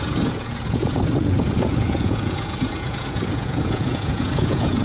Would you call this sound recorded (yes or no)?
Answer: no